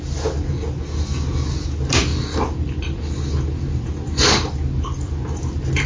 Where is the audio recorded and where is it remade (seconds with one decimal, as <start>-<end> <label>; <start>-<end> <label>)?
0.0-5.9 recorded